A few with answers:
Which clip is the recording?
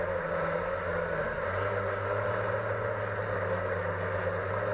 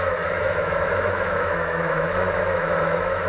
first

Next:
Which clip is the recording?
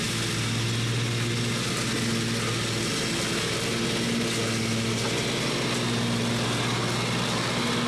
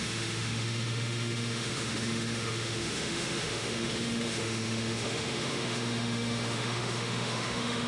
first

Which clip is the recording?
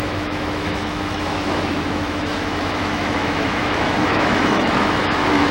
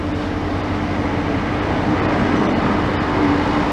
second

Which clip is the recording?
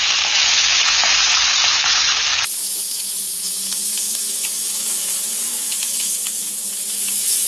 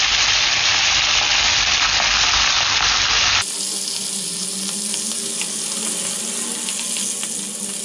second